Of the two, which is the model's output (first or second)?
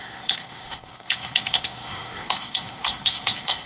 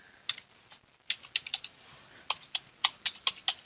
first